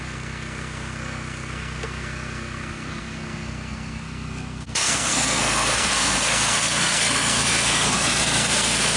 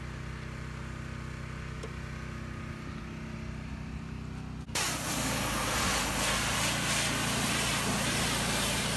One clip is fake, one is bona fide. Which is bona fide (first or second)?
second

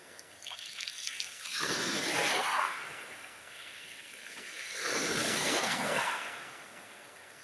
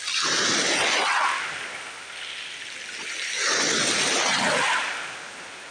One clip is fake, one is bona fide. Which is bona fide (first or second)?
second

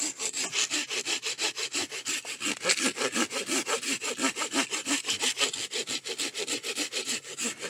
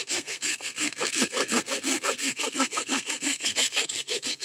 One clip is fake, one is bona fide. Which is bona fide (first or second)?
first